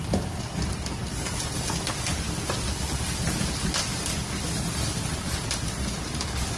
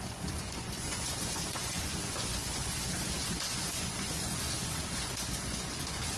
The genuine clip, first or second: first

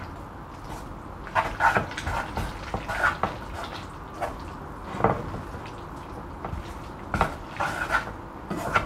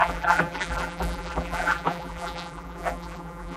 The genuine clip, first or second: first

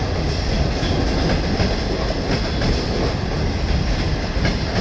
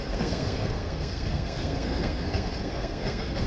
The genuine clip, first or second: first